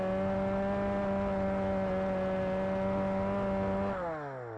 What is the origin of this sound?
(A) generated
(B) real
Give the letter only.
B